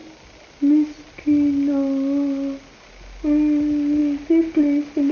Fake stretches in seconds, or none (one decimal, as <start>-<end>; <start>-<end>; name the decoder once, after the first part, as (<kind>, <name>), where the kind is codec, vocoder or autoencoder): none